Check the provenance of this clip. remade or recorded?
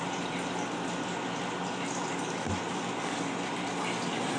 recorded